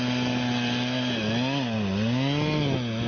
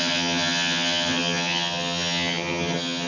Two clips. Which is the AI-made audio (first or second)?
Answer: second